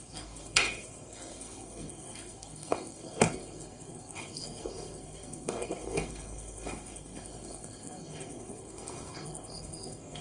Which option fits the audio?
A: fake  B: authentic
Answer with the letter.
A